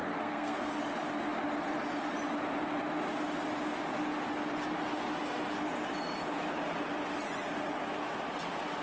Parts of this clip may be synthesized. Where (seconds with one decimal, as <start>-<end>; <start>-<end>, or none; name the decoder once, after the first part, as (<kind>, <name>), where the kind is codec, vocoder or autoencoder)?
0.0-0.7 (codec, SNAC)